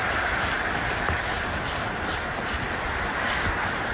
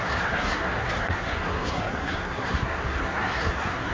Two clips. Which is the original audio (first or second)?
first